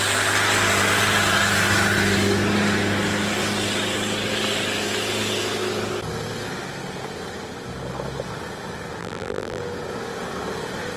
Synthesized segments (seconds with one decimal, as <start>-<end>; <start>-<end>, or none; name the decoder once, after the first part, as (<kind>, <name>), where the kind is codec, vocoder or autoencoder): 9.0-9.6 (vocoder, BigVGAN v2)